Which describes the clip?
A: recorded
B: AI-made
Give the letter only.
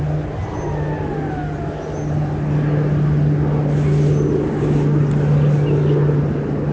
A